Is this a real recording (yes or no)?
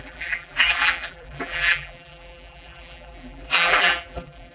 no